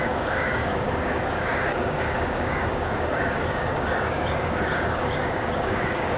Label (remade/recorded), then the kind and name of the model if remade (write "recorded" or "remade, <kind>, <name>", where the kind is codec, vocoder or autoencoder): remade, codec, DAC